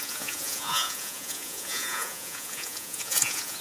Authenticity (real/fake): fake